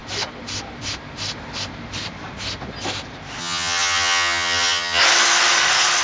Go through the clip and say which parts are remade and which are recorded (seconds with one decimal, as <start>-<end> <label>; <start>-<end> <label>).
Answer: 0.0-3.4 recorded; 3.4-5.0 remade; 5.0-6.0 recorded